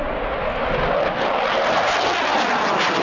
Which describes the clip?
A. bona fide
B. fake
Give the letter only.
A